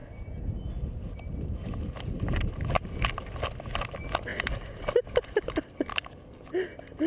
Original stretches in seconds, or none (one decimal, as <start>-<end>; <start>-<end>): 0.0-5.9; 6.5-7.1